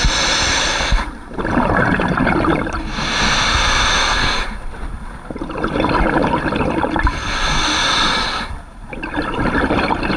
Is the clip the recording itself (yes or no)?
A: yes